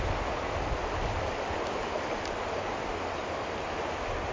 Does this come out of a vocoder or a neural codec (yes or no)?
no